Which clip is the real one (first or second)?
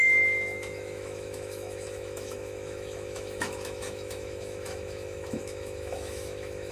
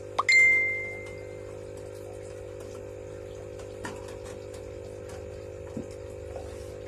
second